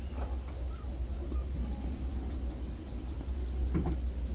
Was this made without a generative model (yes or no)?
yes